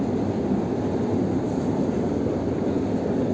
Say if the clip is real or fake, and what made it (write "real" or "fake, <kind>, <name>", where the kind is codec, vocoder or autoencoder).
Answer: real